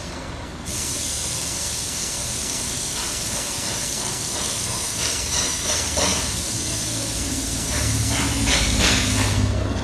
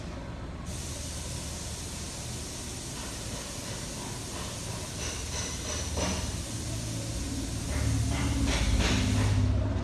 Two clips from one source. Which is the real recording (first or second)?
second